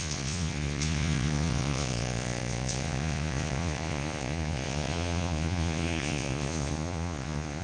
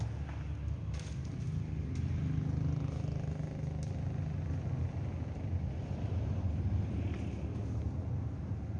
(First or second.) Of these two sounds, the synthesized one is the first